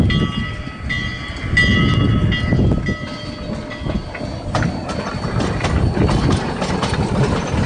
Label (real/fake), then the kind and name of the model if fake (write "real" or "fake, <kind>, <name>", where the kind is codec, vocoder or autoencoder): real